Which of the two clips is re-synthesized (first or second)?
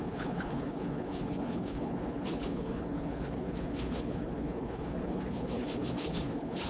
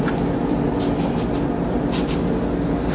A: first